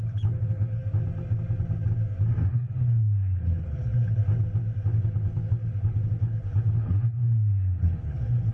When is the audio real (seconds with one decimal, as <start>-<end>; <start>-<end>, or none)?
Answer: 0.8-2.5; 4.2-5.0